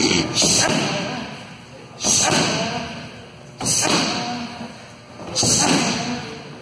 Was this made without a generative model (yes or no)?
yes